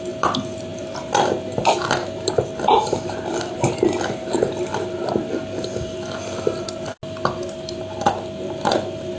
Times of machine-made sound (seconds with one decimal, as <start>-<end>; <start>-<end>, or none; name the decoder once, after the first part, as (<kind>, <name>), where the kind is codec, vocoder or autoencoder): none